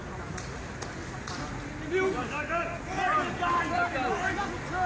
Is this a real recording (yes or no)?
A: yes